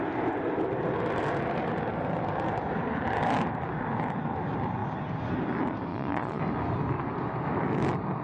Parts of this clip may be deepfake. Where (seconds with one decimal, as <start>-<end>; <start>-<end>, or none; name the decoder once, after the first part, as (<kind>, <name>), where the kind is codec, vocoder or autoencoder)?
5.9-6.4 (vocoder, Vocos)